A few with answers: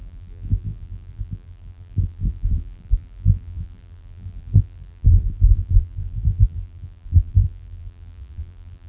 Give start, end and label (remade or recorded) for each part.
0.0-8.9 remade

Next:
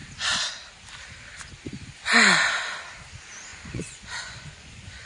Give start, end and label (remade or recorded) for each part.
0.0-3.5 recorded; 3.5-5.1 remade

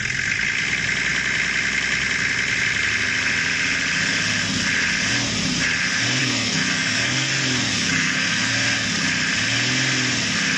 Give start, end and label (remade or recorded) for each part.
0.0-6.2 recorded; 6.2-7.3 remade; 7.3-7.7 recorded; 7.7-8.5 remade; 8.5-10.6 recorded

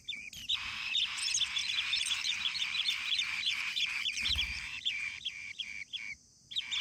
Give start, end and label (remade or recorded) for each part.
0.0-1.6 recorded; 1.6-5.7 remade; 5.7-6.8 recorded